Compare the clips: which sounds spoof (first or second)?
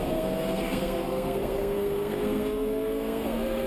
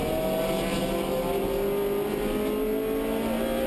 first